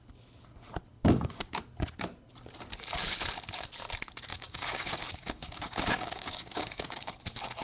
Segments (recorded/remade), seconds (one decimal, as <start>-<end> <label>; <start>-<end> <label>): 0.0-1.0 recorded; 1.0-1.6 remade; 1.6-4.3 recorded; 4.3-7.1 remade; 7.1-7.6 recorded

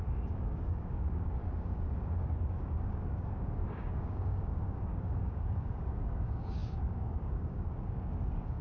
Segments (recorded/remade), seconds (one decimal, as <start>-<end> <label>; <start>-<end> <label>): 0.0-8.6 remade

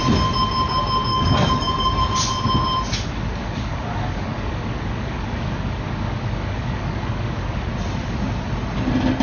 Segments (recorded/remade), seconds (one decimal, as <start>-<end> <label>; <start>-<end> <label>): 0.0-1.1 recorded; 1.1-2.0 remade; 2.0-3.4 recorded; 3.4-7.7 remade; 7.7-9.2 recorded

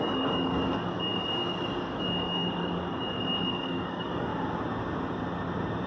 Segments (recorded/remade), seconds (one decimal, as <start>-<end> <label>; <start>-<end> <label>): 0.0-4.3 remade; 4.3-5.9 recorded

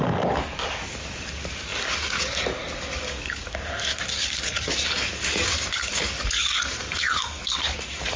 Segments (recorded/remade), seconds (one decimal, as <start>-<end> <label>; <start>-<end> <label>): 0.0-8.2 remade

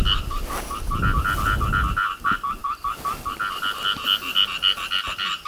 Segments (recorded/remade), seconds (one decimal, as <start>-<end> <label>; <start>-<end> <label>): 0.0-5.5 recorded

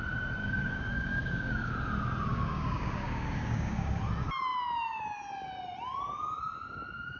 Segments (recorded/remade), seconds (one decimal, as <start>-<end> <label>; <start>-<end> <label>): 0.0-0.4 recorded; 0.4-1.7 remade; 1.7-2.3 recorded; 2.3-4.0 remade; 4.0-7.2 recorded